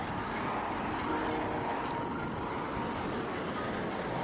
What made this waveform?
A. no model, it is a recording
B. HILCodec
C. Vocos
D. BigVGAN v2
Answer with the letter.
A